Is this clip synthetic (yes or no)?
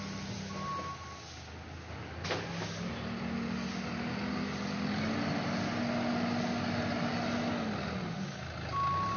no